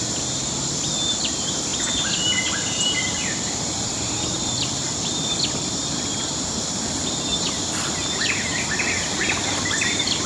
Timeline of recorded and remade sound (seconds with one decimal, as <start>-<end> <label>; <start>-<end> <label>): 0.0-1.7 recorded; 1.7-5.2 remade; 5.2-10.3 recorded